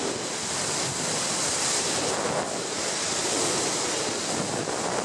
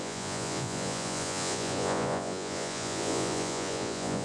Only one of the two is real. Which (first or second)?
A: first